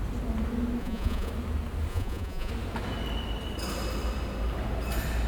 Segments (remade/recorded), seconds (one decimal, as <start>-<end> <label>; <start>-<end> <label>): 0.0-0.8 recorded; 0.8-1.3 remade; 1.3-1.9 recorded; 1.9-2.5 remade; 2.5-5.3 recorded